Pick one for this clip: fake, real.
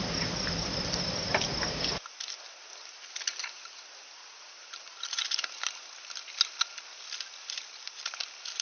real